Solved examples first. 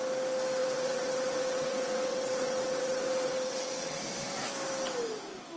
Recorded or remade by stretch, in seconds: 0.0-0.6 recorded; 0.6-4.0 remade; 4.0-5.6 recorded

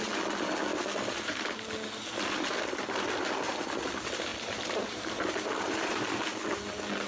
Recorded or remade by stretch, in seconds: 0.0-4.3 recorded; 4.3-5.1 remade; 5.1-7.1 recorded

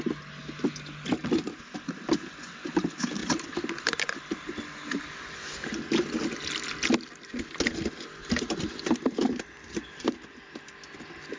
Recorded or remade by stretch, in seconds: 0.0-8.2 recorded; 8.2-10.0 remade; 10.0-11.4 recorded

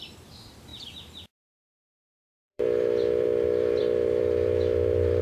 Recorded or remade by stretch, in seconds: 0.0-5.2 remade

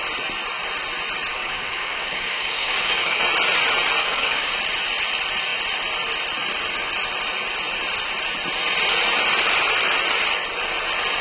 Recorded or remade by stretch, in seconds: 0.0-1.3 recorded; 1.3-3.2 remade; 3.2-4.0 recorded; 4.0-4.5 remade; 4.5-11.2 recorded

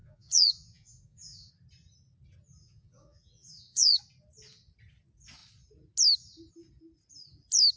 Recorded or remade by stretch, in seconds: 0.0-1.5 remade; 1.5-2.6 recorded; 2.6-4.0 remade; 4.0-7.8 recorded